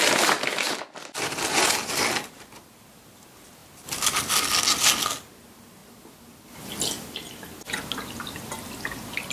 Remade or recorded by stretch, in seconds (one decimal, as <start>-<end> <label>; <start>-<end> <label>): 0.0-9.3 recorded